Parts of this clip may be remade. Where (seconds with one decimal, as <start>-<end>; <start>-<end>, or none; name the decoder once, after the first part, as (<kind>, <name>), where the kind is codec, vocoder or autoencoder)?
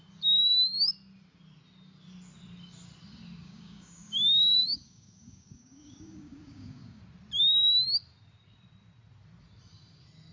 3.4-7.0 (codec, DAC)